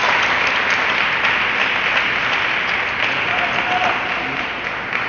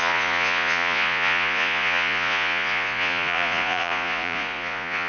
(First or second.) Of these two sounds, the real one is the first